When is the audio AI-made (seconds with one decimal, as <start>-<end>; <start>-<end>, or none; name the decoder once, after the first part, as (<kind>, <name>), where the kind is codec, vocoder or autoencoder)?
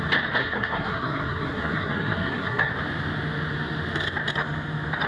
0.4-2.7 (codec, SNAC)